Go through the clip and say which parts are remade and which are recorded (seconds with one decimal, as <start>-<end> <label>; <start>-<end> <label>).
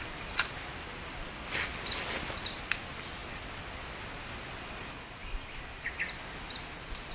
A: 0.0-7.1 recorded